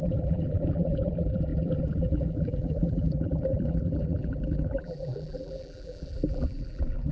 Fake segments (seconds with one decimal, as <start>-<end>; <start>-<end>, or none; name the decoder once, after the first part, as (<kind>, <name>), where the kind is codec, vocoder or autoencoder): 0.0-7.1 (vocoder, BigVGAN v2)